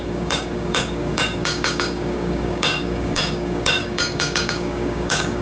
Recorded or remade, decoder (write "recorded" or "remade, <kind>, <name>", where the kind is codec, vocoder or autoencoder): remade, codec, DAC